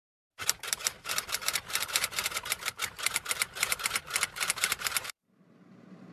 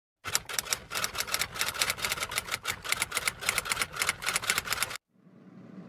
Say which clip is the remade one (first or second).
first